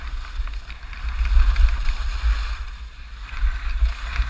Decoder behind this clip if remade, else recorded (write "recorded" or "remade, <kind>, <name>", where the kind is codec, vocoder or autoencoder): recorded